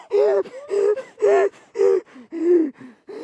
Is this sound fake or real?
real